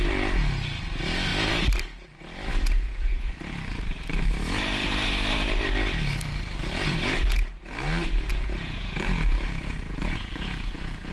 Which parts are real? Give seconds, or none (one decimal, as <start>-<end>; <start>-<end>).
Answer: 0.0-2.5; 3.3-8.3

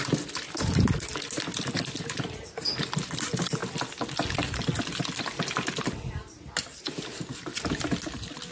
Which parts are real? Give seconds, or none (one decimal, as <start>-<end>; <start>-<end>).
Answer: 0.0-8.5